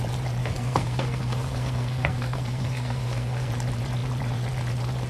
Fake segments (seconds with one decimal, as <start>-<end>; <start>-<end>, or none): 0.4-3.5

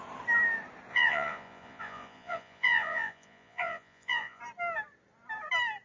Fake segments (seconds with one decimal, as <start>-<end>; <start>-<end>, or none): 0.9-4.4

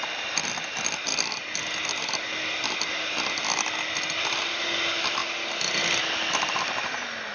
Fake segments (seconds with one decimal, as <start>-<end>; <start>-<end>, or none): none

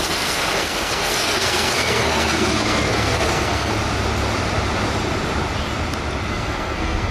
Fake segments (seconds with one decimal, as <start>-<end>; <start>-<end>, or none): 0.0-3.7; 6.3-7.1

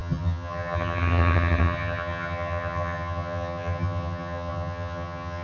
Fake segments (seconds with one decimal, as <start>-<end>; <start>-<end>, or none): 0.0-5.4

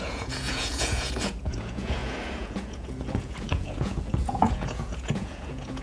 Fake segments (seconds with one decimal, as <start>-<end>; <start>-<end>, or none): 0.0-5.8

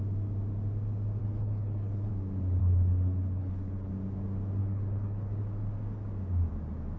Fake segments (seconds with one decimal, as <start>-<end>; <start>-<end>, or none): 1.2-2.1; 2.6-3.9; 4.6-5.4

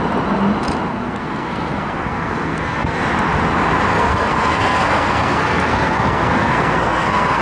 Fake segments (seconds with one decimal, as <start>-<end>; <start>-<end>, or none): 0.9-3.0; 3.9-7.4